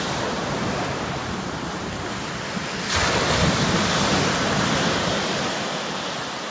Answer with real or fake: real